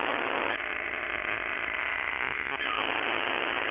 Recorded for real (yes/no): no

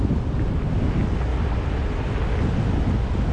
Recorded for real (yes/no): yes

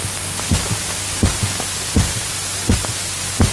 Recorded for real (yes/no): yes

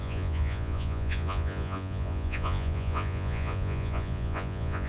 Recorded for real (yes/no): no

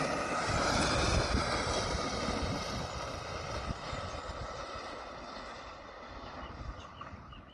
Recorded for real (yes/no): yes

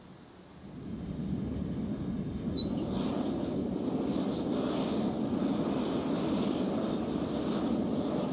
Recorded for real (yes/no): yes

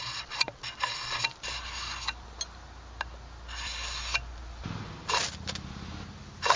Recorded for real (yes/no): yes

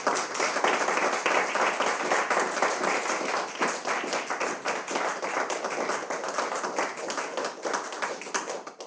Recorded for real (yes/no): yes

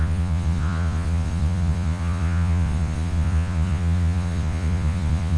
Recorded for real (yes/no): no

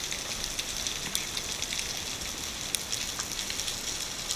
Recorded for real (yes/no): yes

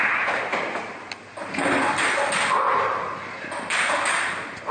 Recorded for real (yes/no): yes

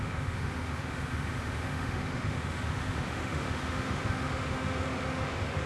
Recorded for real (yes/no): no